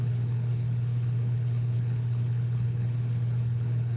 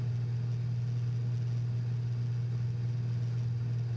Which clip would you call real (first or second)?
second